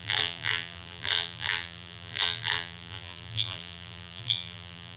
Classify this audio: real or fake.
fake